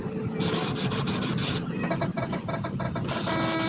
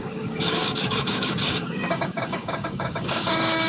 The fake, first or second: second